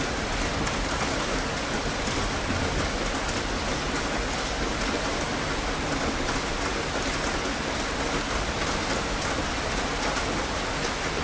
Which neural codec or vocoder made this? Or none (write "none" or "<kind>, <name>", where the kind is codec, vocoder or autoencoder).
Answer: none